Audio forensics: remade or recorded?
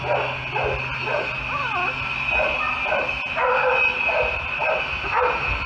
recorded